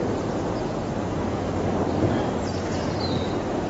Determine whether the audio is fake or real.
real